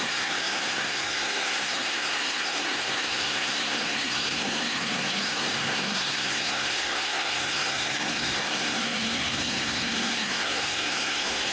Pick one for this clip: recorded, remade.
remade